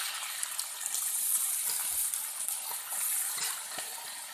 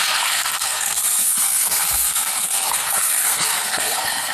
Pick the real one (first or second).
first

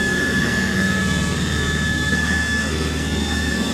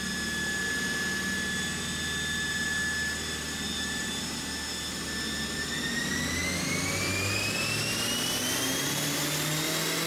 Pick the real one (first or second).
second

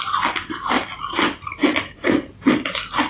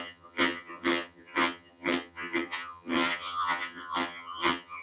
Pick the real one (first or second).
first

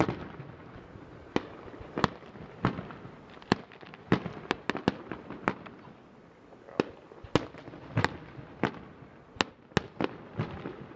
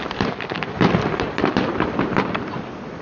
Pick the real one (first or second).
first